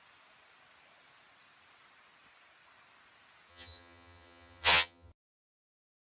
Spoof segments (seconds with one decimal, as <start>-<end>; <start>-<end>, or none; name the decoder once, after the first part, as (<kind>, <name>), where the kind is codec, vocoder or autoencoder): 3.5-5.1 (vocoder, HiFi-GAN)